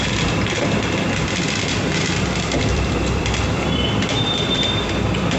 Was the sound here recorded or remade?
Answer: remade